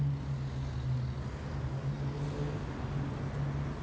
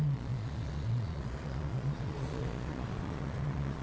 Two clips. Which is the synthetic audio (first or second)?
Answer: second